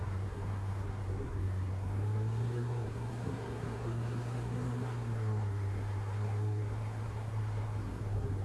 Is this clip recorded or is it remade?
remade